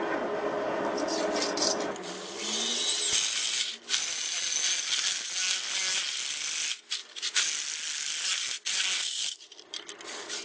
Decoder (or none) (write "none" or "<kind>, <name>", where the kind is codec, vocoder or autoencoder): none